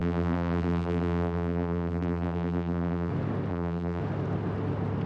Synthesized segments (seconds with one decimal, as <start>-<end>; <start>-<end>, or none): 0.0-3.1; 3.5-4.0

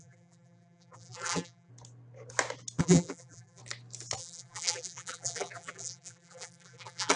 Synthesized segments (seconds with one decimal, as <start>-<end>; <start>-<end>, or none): 0.0-1.7; 2.8-3.6; 4.2-7.2

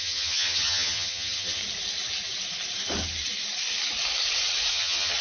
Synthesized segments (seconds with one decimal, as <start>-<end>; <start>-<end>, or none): 0.0-1.6; 4.7-5.2